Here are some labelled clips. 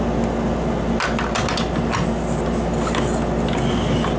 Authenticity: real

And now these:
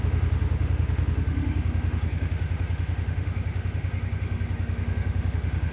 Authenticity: fake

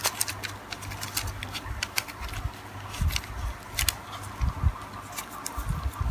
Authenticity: real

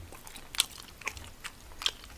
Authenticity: real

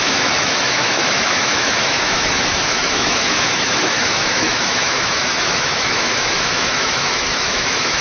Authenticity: fake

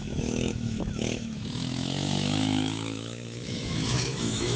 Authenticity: fake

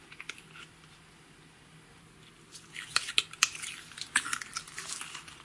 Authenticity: real